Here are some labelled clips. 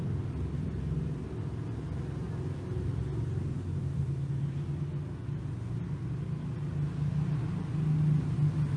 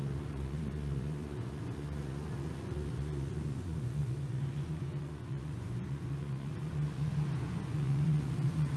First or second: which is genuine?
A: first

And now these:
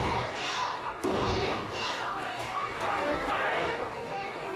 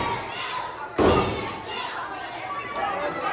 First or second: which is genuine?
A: second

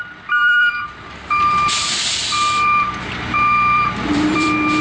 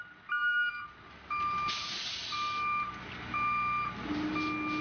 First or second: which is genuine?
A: second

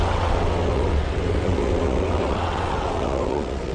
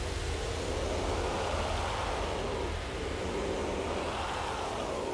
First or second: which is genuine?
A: second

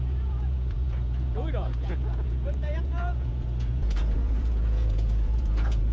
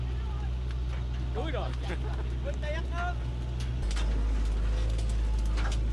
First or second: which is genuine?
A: second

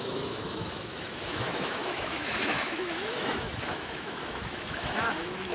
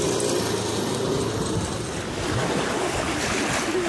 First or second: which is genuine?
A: second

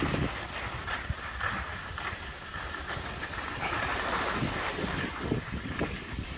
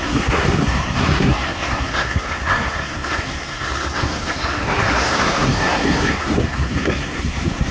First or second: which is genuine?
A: first